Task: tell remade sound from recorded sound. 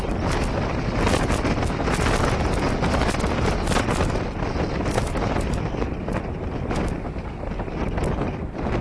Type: recorded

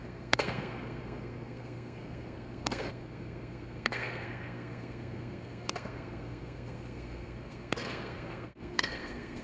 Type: remade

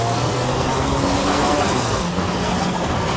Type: remade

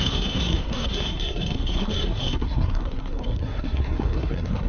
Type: remade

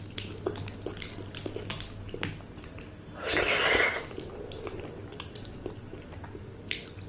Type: recorded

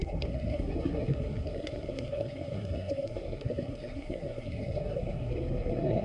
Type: remade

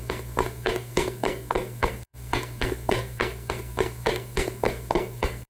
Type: remade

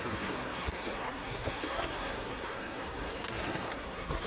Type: remade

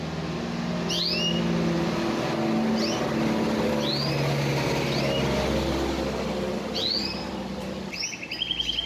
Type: recorded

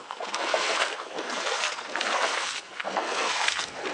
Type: remade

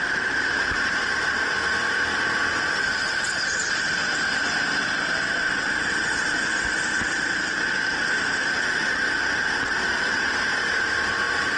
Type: recorded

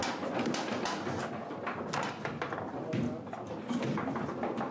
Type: recorded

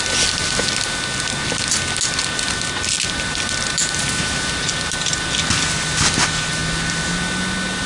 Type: recorded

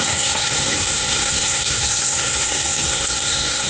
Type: remade